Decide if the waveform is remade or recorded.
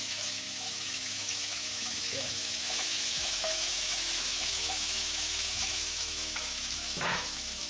remade